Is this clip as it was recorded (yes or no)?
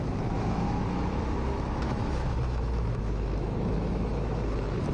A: no